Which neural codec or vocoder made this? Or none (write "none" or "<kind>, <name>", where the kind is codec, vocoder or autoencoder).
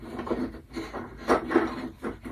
none